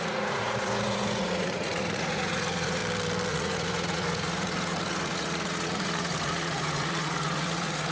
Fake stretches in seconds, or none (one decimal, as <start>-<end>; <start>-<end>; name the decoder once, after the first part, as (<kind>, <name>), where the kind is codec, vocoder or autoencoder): 0.0-2.8 (vocoder, Vocos); 3.3-7.9